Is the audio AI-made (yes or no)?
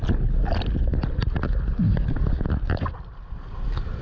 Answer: no